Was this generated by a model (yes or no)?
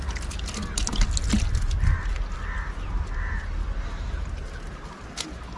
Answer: no